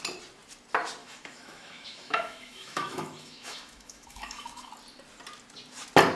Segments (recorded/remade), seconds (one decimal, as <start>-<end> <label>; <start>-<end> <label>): 0.0-1.0 recorded; 1.0-4.7 remade; 4.7-6.2 recorded